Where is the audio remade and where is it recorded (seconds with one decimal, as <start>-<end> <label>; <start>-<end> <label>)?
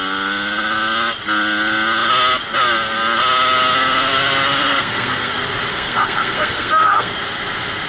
0.0-4.7 recorded; 4.7-5.3 remade; 5.3-5.7 recorded; 5.7-7.1 remade; 7.1-7.9 recorded